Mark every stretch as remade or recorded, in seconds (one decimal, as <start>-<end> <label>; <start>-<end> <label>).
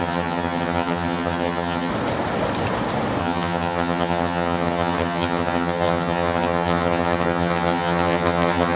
0.0-1.9 remade; 1.9-3.2 recorded; 3.2-8.8 remade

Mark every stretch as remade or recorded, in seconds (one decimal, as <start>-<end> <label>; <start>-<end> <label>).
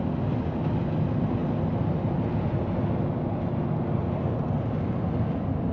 0.0-5.7 recorded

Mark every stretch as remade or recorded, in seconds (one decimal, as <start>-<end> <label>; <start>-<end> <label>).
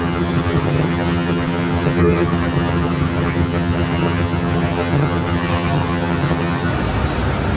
0.0-6.7 remade; 6.7-7.6 recorded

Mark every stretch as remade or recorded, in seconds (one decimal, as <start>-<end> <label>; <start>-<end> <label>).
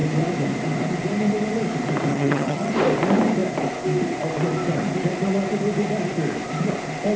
0.0-2.1 recorded; 2.1-2.7 remade; 2.7-7.2 recorded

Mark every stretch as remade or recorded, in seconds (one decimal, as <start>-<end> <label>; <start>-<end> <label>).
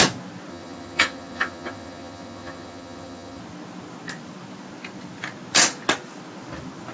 0.0-0.5 recorded; 0.5-3.4 remade; 3.4-6.9 recorded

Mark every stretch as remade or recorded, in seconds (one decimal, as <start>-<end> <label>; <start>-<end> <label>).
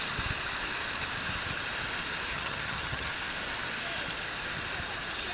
0.0-2.3 recorded; 2.3-3.1 remade; 3.1-5.3 recorded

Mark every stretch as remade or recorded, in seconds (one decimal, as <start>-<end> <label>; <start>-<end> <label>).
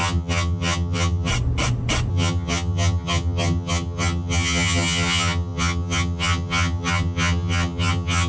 0.0-1.3 remade; 1.3-2.1 recorded; 2.1-8.3 remade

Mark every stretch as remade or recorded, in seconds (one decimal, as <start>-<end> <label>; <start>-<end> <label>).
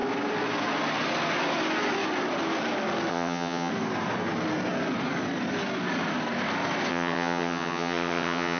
0.0-3.1 recorded; 3.1-3.7 remade; 3.7-6.9 recorded; 6.9-8.6 remade